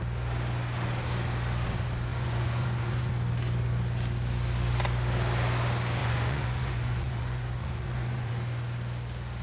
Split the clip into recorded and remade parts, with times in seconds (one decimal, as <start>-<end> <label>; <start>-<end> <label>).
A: 0.0-2.1 recorded; 2.1-3.1 remade; 3.1-6.0 recorded; 6.0-8.3 remade; 8.3-9.4 recorded